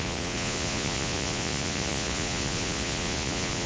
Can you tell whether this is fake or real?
fake